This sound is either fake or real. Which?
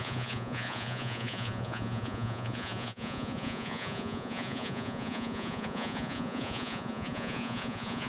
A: fake